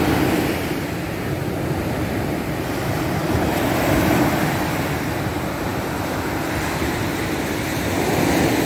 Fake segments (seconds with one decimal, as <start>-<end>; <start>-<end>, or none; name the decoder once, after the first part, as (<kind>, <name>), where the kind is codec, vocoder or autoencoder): 3.2-4.7 (vocoder, BigVGAN v2); 5.7-6.9